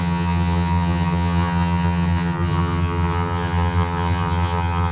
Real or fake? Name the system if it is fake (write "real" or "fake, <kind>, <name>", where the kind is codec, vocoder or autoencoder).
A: fake, vocoder, HiFi-GAN